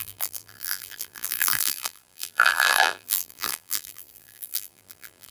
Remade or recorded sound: remade